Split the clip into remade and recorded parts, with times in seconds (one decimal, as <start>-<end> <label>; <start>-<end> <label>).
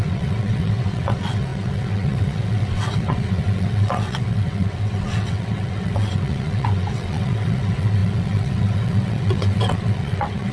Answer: 0.0-10.5 remade